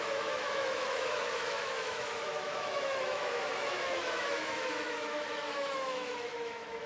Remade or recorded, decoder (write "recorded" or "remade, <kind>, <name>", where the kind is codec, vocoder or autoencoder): remade, autoencoder, DAC-VAE